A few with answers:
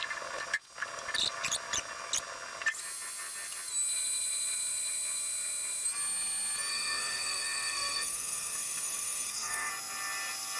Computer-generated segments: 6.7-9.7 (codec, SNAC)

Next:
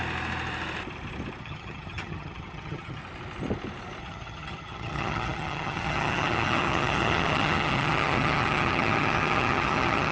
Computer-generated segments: 1.4-3.0 (vocoder, HiFi-GAN); 4.0-10.1

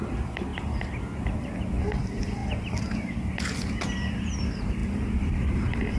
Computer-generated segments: 2.4-3.1 (vocoder, BigVGAN v2); 4.8-6.0

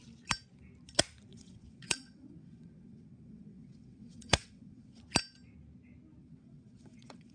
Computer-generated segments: 1.3-5.0 (vocoder, WaveNeXt); 6.2-7.3